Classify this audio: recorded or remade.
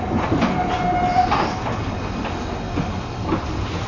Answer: recorded